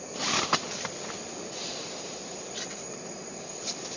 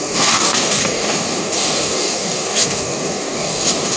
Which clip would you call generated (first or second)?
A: second